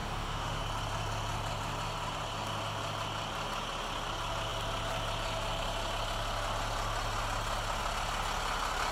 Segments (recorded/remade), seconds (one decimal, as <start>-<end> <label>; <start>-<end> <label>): 0.0-0.6 remade; 0.6-8.9 recorded